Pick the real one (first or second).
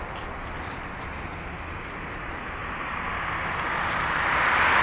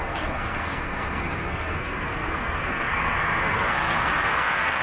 first